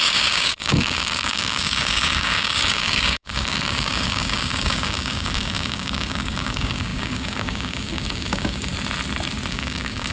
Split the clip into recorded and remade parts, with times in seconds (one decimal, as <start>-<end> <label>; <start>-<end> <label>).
0.0-8.7 remade; 8.7-9.5 recorded; 9.5-10.1 remade